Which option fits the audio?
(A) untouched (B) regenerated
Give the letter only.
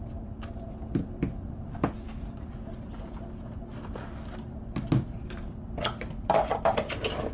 B